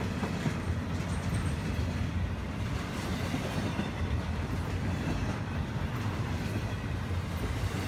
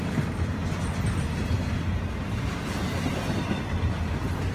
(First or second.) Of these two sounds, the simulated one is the first